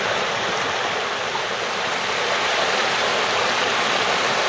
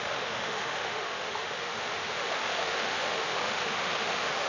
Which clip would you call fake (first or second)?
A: second